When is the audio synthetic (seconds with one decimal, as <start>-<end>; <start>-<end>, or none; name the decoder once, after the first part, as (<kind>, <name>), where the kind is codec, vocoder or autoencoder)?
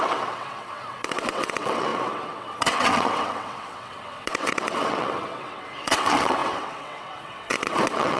0.0-8.2 (vocoder, WaveNeXt)